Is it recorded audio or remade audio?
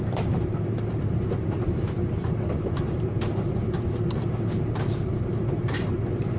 remade